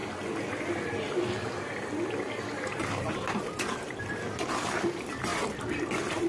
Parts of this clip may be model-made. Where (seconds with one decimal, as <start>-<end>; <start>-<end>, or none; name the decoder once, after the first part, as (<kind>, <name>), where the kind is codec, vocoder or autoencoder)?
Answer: none